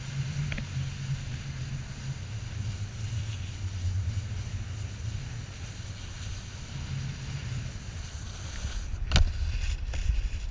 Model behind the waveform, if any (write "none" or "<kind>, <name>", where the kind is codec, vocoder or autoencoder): none